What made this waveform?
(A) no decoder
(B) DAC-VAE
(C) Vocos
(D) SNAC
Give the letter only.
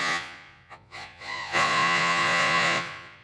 C